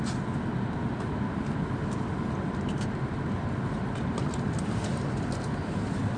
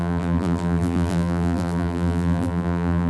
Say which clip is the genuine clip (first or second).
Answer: first